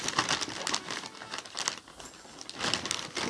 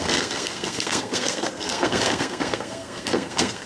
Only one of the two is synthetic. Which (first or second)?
second